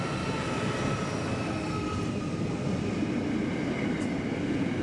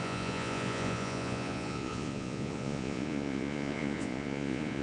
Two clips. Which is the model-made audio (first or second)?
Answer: second